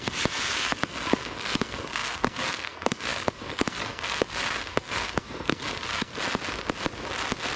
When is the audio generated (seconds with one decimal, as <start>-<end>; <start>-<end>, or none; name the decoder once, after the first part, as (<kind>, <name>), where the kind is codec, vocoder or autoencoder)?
0.0-6.1 (codec, SNAC)